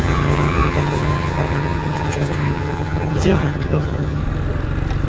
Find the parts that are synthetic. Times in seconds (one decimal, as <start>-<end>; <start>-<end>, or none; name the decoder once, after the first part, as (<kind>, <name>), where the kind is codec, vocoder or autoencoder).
0.0-4.2 (vocoder, HiFi-GAN)